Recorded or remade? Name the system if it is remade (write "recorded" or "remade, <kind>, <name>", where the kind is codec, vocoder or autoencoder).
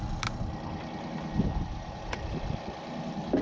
recorded